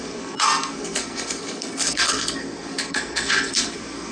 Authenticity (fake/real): fake